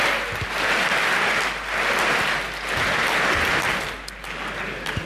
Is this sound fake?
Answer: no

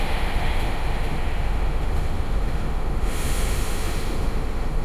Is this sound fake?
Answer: yes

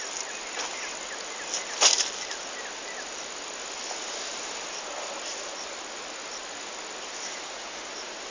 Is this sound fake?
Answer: no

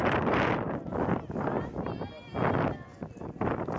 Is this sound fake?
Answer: no